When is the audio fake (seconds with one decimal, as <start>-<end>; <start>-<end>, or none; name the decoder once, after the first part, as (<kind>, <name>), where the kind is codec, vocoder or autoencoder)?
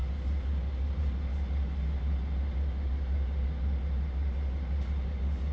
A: none